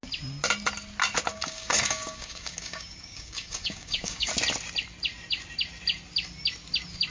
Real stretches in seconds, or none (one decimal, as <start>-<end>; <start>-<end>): 0.0-1.3; 4.3-7.1

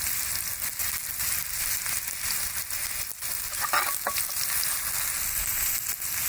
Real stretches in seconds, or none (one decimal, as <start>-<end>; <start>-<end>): 0.0-6.3

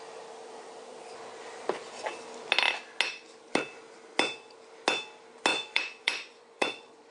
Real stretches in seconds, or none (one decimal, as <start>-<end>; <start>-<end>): 0.0-5.5

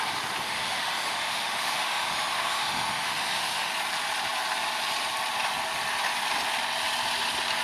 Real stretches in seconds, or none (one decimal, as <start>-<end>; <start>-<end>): 0.0-0.4; 3.7-7.6

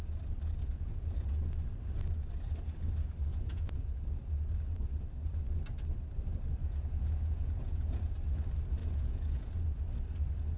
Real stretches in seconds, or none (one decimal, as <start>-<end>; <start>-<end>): 0.0-0.7; 1.4-3.3; 4.0-6.6; 8.0-8.8; 9.5-10.6

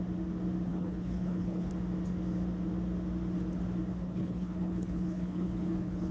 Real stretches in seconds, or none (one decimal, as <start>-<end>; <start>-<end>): 0.0-0.7; 1.7-3.9

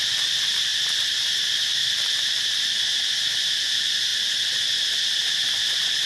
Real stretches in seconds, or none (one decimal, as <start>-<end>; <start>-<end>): 0.0-1.8; 2.6-6.1

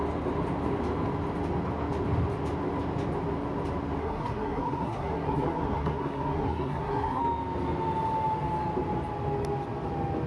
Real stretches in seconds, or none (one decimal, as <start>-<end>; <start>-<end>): 0.0-4.0; 7.2-10.3